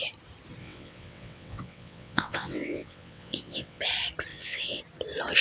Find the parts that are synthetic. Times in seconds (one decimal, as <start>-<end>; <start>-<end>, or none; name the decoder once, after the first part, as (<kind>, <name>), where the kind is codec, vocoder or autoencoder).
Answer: 0.6-3.8 (vocoder, WaveNeXt); 4.3-4.8

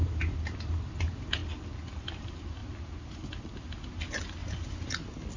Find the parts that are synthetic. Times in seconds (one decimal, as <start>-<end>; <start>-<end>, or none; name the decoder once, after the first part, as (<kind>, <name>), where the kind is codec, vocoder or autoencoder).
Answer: none

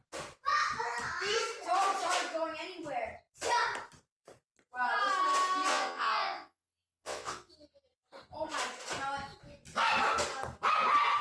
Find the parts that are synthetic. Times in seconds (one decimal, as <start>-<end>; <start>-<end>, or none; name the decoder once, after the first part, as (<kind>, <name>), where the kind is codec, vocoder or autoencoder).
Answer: 5.7-7.5 (vocoder, WaveNeXt)

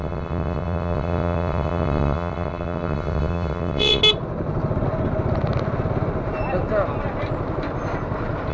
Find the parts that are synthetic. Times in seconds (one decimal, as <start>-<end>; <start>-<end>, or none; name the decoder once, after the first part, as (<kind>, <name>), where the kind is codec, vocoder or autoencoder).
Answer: 0.0-4.0 (vocoder, WaveNeXt)

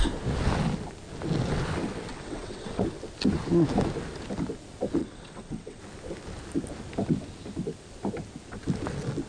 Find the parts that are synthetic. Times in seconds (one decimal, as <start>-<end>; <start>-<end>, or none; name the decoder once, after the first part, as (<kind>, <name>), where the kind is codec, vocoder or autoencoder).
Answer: 2.1-2.8 (vocoder, WaveNeXt); 5.0-5.8